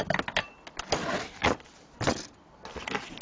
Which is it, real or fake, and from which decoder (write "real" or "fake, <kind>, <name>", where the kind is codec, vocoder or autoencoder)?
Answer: real